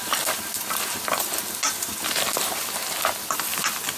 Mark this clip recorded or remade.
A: recorded